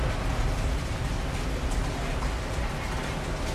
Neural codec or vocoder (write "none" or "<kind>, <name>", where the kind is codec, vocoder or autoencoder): none